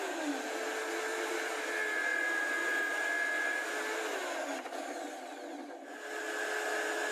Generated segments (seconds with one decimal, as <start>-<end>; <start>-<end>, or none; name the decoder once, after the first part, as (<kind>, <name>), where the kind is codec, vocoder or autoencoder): 1.1-1.7 (vocoder, BigVGAN v2)